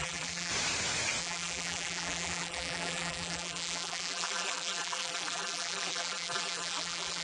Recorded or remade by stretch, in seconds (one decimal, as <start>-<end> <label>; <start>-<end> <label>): 0.0-0.5 remade; 0.5-1.2 recorded; 1.2-7.2 remade